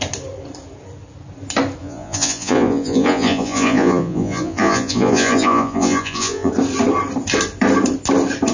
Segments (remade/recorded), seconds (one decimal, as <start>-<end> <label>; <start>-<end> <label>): 0.0-1.8 recorded; 1.8-6.5 remade; 6.5-8.5 recorded